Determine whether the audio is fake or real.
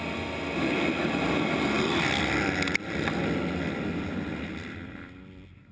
real